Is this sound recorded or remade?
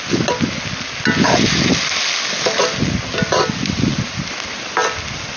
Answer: recorded